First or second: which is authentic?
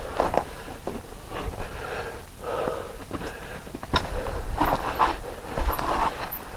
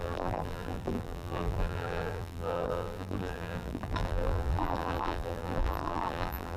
first